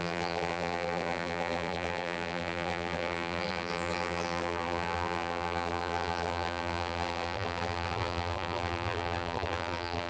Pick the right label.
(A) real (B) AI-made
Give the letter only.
B